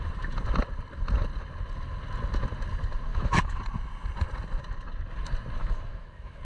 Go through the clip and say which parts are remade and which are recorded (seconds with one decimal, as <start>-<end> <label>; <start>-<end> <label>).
0.0-3.1 recorded; 3.1-3.6 remade; 3.6-5.6 recorded; 5.6-6.4 remade